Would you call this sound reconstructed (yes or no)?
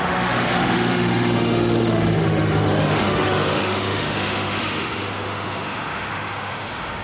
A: yes